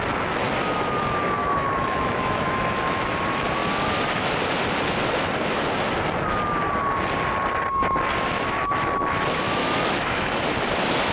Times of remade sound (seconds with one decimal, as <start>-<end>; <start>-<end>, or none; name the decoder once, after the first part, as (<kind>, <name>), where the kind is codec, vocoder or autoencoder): 1.4-3.0 (autoencoder, DAC-VAE); 9.6-10.4